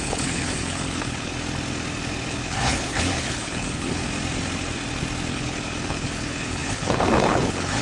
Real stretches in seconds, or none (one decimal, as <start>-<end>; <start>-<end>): 1.3-2.3; 4.0-5.3